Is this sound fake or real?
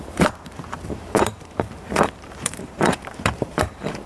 fake